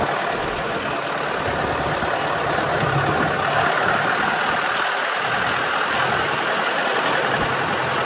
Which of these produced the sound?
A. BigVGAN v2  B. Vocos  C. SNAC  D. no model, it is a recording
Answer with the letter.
D